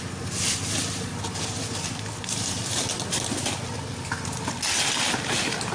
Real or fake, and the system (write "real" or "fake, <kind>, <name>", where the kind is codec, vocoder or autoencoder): real